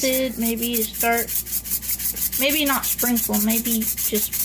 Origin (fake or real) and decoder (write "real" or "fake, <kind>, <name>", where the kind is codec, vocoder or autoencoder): real